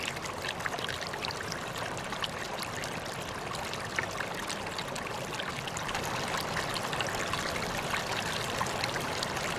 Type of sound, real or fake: real